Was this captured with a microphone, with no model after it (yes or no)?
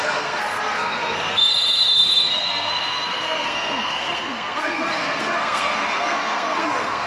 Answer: no